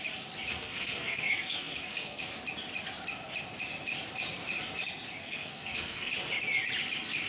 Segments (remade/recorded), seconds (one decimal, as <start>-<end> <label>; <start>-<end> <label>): 0.0-0.5 recorded; 0.5-2.2 remade; 2.2-5.2 recorded; 5.2-6.1 remade; 6.1-7.3 recorded